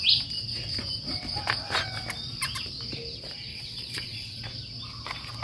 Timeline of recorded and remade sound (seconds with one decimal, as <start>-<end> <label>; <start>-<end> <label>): 0.0-3.5 recorded; 3.5-4.4 remade; 4.4-5.4 recorded